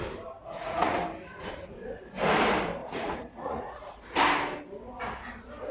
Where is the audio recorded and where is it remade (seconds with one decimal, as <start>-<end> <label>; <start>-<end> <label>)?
0.0-0.4 recorded; 0.4-1.0 remade; 1.0-2.8 recorded; 2.8-3.8 remade; 3.8-5.7 recorded